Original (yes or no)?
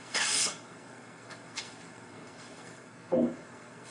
no